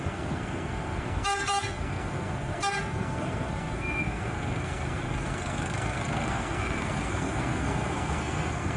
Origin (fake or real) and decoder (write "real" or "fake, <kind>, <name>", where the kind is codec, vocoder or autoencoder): fake, codec, SNAC